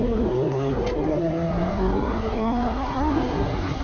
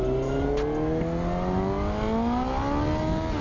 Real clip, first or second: second